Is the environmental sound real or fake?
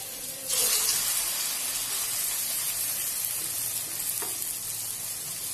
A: real